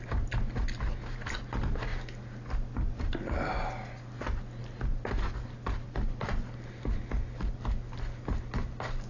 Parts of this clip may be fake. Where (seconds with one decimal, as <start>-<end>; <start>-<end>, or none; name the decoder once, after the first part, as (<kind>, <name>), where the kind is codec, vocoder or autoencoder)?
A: none

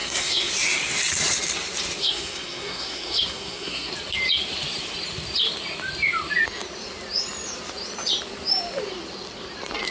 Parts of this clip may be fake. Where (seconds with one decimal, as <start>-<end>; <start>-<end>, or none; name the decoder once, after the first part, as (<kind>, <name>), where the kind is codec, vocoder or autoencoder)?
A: 0.0-0.5 (codec, SNAC); 2.0-3.9

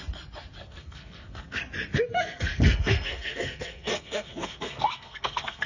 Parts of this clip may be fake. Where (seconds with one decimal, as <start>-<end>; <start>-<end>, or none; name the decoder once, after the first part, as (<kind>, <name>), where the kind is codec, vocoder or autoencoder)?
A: 0.6-1.6 (codec, SNAC); 2.1-5.7

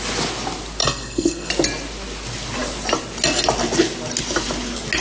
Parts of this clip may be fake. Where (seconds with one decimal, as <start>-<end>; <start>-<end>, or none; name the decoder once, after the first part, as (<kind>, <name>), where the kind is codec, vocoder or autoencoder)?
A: 0.8-1.5 (codec, SNAC)

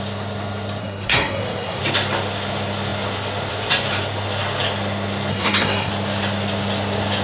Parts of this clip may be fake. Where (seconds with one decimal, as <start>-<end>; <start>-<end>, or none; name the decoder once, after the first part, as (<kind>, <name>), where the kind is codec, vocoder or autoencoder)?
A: 0.8-1.8 (codec, SNAC); 5.3-5.9

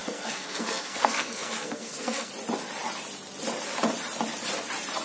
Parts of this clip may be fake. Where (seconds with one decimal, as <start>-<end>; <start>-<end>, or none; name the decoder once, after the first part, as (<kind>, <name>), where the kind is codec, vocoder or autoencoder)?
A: 0.0-2.3 (codec, SNAC)

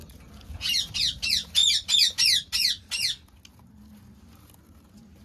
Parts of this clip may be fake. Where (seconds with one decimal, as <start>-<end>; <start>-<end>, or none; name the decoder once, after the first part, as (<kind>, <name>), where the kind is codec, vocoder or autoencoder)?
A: none